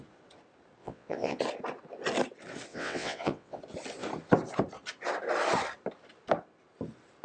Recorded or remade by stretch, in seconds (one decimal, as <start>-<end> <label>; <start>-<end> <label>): 0.0-0.8 recorded; 0.8-1.4 remade; 1.4-2.7 recorded; 2.7-3.6 remade; 3.6-7.2 recorded